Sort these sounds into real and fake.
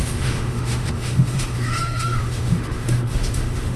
fake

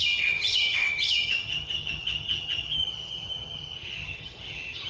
fake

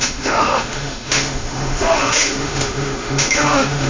fake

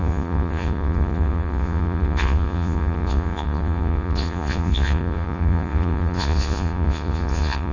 fake